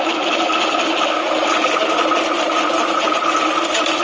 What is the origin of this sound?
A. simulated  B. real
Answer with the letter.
B